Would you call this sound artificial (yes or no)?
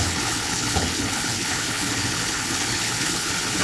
yes